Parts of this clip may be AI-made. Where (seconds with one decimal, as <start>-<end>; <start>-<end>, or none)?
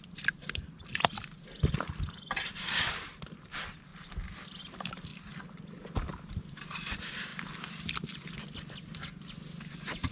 0.0-0.9; 2.6-3.9; 4.6-5.1; 6.1-7.3